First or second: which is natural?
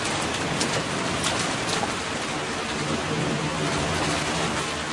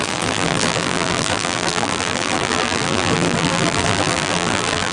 first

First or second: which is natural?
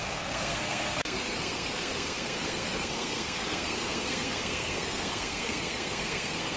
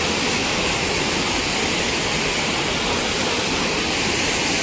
second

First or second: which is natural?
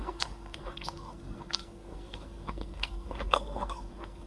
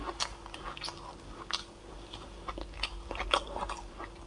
second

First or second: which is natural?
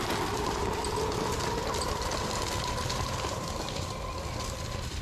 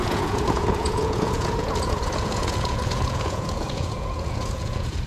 first